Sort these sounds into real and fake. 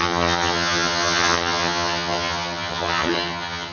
fake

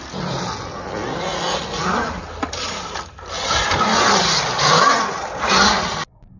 real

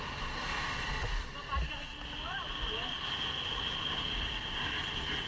real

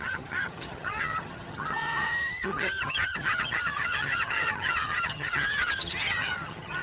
fake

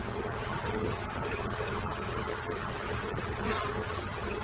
fake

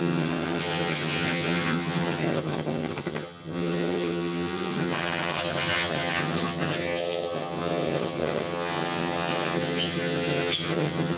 fake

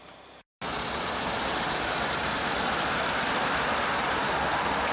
real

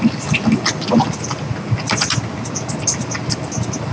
real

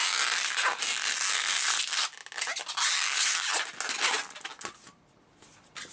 real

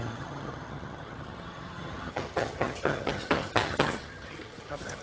fake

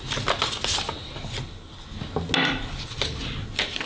real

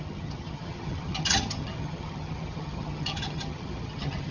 fake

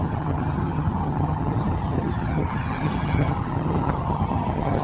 fake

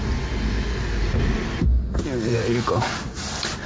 real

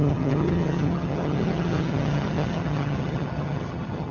fake